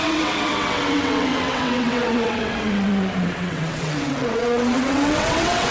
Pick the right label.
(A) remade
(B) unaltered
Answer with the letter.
A